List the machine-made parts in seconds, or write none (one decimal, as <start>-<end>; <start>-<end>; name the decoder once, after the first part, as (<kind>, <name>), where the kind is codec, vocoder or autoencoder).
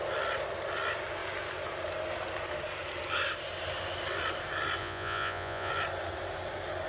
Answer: 4.8-5.7 (vocoder, Vocos)